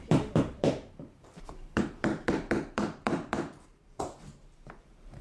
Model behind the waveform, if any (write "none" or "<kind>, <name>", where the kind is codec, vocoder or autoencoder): vocoder, BigVGAN v2